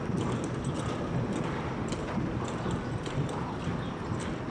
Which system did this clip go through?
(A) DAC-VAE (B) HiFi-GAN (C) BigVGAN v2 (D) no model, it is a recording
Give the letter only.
D